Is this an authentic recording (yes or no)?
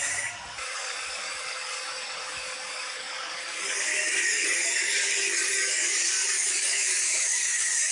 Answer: no